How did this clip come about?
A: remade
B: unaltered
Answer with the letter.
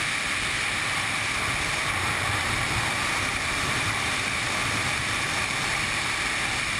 A